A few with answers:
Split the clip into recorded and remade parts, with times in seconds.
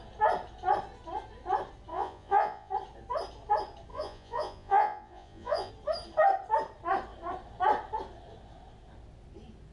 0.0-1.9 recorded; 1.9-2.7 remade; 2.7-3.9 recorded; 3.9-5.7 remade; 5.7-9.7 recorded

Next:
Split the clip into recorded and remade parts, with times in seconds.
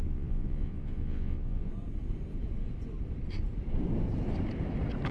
0.0-1.7 remade; 1.7-5.1 recorded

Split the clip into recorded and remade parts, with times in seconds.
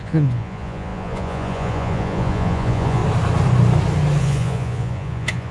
0.0-3.0 remade; 3.0-4.2 recorded; 4.2-5.5 remade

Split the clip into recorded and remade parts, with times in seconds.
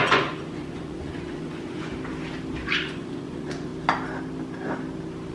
0.0-1.9 remade; 1.9-2.7 recorded; 2.7-3.7 remade; 3.7-5.3 recorded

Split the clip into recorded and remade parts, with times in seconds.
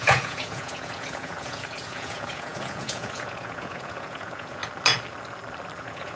0.0-4.6 remade; 4.6-5.8 recorded; 5.8-6.2 remade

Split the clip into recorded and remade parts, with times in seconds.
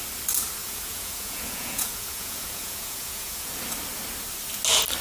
0.0-0.6 recorded; 0.6-3.6 remade; 3.6-5.0 recorded